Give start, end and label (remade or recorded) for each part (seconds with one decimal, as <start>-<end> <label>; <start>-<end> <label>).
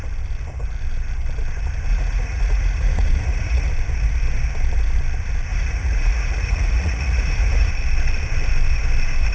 0.0-1.9 recorded; 1.9-3.7 remade; 3.7-5.5 recorded; 5.5-7.7 remade; 7.7-9.3 recorded